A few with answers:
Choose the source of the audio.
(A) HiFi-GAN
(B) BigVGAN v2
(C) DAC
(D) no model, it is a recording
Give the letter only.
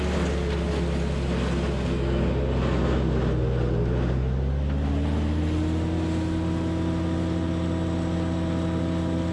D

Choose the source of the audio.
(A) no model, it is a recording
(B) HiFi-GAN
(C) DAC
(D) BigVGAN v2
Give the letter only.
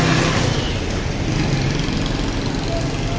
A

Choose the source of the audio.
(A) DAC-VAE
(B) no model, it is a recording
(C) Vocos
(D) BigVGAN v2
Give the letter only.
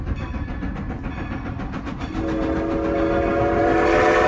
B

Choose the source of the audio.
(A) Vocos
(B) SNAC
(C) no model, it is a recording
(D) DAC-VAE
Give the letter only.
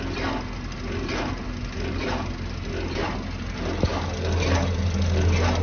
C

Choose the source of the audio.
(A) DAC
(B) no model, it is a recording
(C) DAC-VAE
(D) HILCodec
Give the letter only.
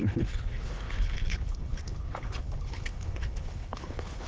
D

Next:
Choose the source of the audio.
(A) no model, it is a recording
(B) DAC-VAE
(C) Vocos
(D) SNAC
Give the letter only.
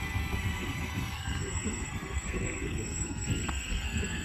D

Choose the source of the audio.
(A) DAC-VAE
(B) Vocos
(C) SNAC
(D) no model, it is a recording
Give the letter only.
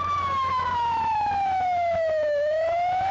A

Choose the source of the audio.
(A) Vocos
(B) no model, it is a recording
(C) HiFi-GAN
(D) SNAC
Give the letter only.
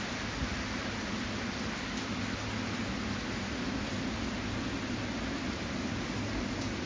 B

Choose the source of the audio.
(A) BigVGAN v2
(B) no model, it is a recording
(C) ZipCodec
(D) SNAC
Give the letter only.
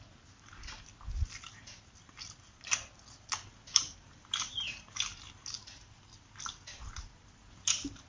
B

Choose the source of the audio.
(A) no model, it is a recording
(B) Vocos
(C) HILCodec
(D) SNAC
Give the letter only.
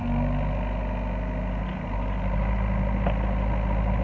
A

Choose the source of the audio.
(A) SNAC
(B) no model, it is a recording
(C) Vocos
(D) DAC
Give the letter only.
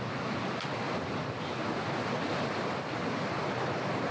B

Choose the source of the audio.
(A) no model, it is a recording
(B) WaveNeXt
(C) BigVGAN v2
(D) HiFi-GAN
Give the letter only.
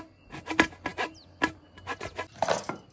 A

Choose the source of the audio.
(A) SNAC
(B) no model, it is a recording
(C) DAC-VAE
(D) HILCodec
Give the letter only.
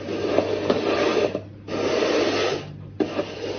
B